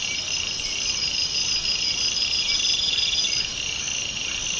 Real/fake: real